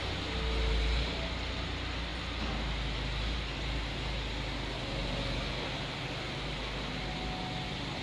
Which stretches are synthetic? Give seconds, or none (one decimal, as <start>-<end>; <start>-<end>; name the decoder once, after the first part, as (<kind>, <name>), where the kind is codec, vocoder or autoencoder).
none